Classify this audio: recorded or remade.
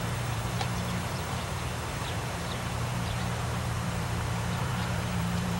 remade